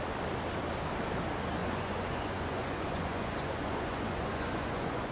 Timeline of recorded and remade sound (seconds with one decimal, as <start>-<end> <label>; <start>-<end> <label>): 0.0-1.6 recorded; 1.6-5.1 remade